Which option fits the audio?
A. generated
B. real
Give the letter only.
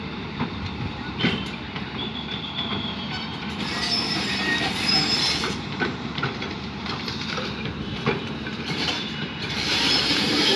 A